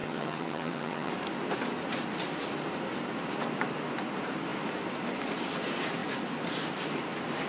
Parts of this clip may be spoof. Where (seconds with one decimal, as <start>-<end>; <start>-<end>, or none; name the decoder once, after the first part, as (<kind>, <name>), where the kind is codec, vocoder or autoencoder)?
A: 0.0-1.1 (vocoder, HiFi-GAN)